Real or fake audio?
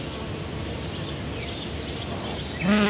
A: real